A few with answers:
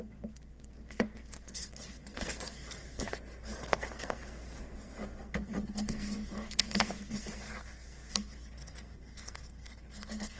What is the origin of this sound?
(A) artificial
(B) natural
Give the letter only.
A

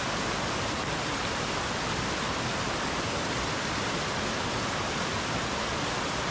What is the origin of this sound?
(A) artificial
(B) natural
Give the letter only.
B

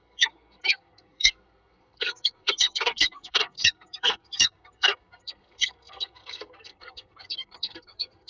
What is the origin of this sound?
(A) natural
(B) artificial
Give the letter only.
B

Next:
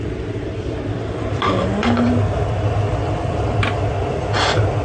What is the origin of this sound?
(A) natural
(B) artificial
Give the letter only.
A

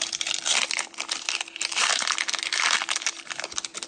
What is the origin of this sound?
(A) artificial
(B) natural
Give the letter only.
B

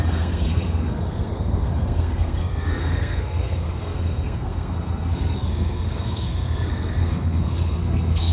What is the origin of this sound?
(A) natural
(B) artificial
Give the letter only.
B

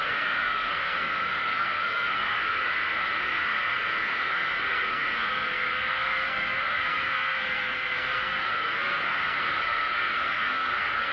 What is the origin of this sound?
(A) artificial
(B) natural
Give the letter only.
A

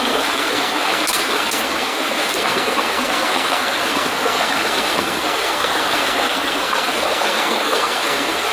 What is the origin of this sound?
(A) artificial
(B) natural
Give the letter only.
A